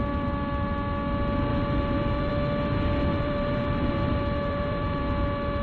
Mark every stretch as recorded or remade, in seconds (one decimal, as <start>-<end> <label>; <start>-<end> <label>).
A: 0.0-1.5 recorded; 1.5-2.3 remade; 2.3-3.1 recorded; 3.1-5.0 remade; 5.0-5.6 recorded